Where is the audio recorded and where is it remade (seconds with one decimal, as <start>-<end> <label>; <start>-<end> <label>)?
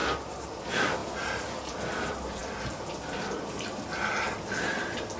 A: 0.0-5.2 recorded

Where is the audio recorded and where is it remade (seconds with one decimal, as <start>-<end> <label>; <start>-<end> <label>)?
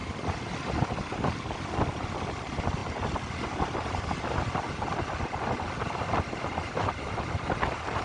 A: 0.0-2.8 remade; 2.8-3.3 recorded; 3.3-8.0 remade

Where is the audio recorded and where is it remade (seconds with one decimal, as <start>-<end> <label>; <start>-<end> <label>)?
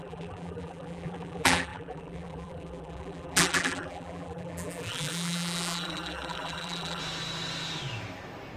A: 0.0-7.0 remade; 7.0-8.6 recorded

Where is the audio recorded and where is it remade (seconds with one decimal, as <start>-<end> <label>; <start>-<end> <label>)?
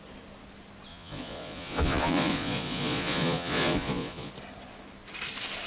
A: 0.0-0.9 recorded; 0.9-4.3 remade; 4.3-5.7 recorded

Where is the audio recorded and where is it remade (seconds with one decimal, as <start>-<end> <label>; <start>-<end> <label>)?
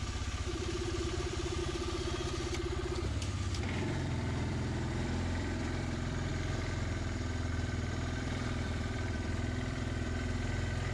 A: 0.0-1.6 remade; 1.6-3.8 recorded; 3.8-6.3 remade; 6.3-7.5 recorded; 7.5-10.9 remade